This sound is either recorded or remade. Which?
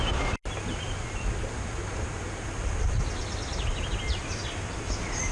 recorded